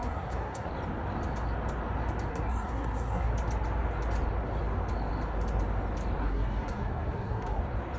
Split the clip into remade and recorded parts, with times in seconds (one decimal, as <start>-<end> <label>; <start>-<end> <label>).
0.0-0.7 remade; 0.7-2.3 recorded; 2.3-3.3 remade; 3.3-6.2 recorded; 6.2-7.6 remade; 7.6-8.0 recorded